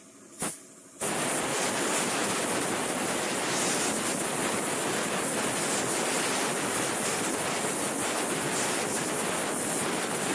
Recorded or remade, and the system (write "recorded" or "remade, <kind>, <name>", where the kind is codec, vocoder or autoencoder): recorded